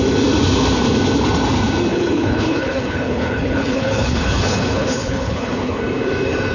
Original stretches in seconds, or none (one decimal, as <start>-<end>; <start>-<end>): 0.0-1.9; 5.8-6.5